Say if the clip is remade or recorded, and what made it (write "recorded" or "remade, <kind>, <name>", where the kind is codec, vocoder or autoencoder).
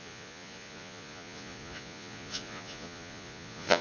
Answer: remade, vocoder, Vocos